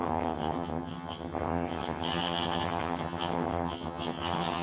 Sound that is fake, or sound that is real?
fake